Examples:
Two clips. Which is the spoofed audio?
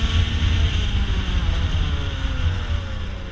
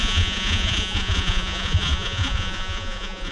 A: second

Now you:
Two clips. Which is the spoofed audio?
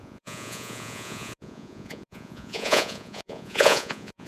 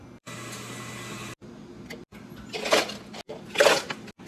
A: first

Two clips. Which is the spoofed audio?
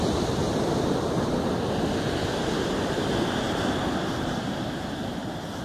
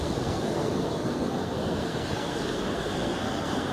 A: second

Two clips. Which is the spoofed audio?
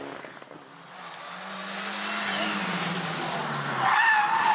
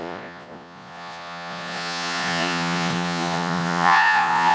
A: second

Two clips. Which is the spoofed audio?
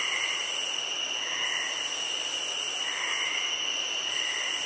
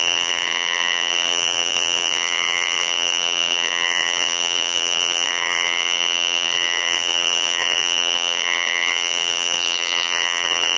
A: second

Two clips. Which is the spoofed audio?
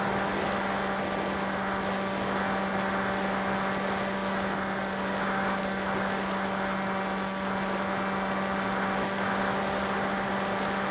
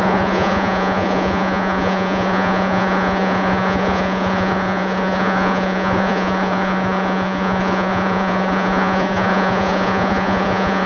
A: second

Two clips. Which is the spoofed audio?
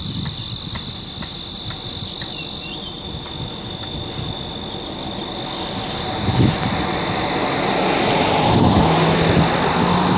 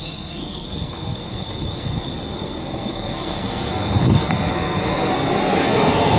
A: second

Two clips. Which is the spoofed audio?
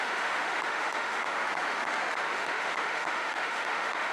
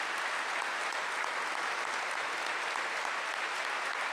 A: first